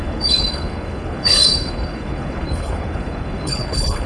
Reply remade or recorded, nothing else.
remade